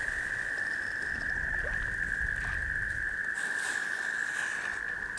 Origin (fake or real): real